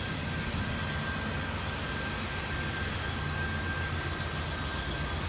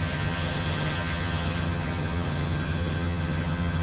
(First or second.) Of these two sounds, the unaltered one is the first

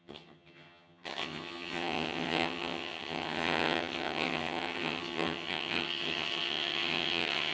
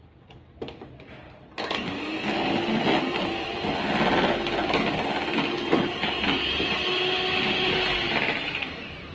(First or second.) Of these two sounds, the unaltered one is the second